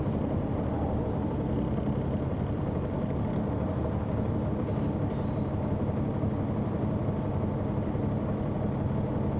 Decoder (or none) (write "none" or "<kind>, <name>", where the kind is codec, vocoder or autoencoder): none